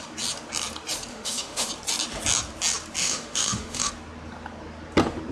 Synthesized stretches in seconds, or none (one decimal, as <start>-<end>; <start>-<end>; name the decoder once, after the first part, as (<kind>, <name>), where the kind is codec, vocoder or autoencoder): 1.1-1.7 (autoencoder, DAC-VAE); 3.0-3.9